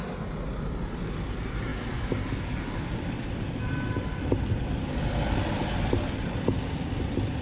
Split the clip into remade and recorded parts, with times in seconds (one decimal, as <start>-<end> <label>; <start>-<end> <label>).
0.0-7.4 recorded